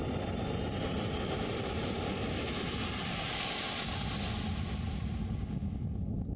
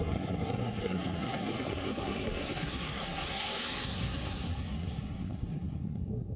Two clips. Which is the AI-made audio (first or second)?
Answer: second